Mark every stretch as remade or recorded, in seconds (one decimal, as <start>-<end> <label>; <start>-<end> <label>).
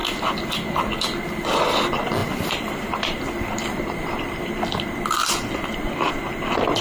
0.0-6.8 recorded